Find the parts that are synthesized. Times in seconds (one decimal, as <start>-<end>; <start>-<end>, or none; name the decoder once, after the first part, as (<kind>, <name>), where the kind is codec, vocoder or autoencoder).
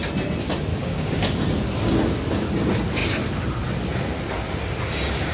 0.7-1.4 (codec, DAC)